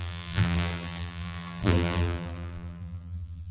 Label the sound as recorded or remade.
remade